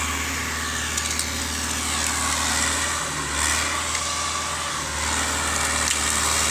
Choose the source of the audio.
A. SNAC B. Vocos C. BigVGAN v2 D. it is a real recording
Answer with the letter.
D